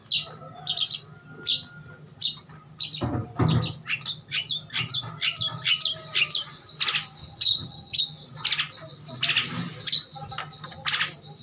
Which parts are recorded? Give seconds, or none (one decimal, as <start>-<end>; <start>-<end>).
0.0-7.2; 8.0-11.4